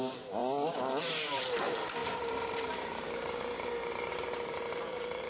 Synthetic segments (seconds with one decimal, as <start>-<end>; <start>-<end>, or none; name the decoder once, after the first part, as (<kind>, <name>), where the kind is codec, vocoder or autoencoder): 0.0-0.4 (vocoder, BigVGAN v2); 1.0-5.3